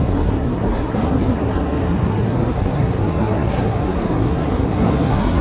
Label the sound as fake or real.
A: fake